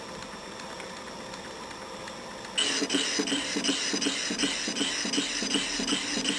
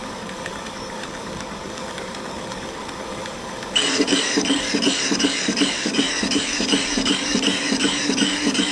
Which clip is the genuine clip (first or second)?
first